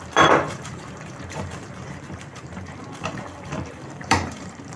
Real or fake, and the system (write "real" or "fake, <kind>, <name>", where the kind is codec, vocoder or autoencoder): fake, vocoder, BigVGAN v2